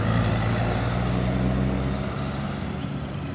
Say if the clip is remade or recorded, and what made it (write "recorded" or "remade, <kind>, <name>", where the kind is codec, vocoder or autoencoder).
recorded